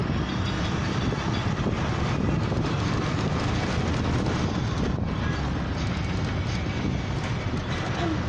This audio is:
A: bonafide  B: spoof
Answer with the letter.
A